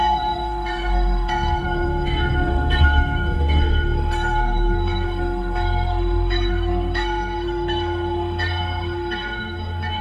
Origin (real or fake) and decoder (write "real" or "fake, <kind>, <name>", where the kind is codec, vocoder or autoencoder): fake, codec, SNAC